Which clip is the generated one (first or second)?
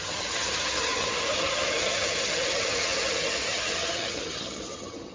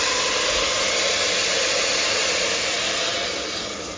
first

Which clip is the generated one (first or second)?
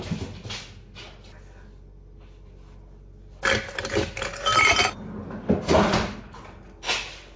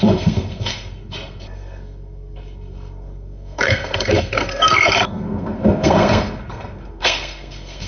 second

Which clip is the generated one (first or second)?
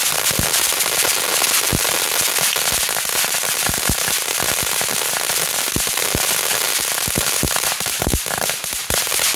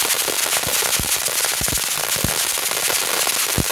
first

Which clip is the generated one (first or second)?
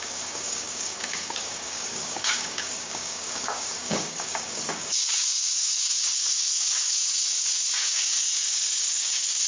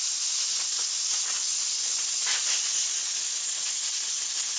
first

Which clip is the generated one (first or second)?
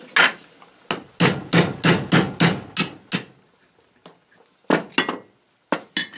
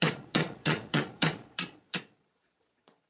second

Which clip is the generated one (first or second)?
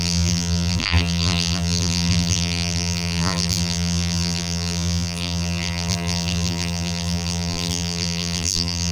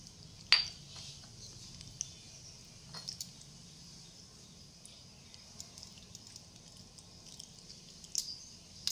first